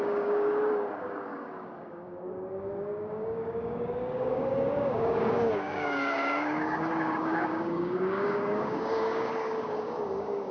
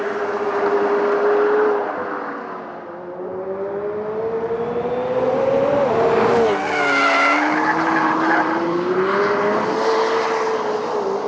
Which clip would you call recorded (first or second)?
second